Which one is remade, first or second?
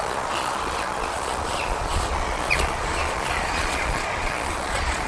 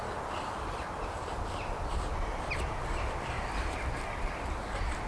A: first